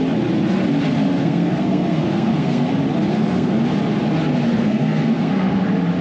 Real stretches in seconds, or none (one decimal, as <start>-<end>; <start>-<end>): 0.0-1.2; 2.7-3.1; 3.6-4.5; 5.6-6.0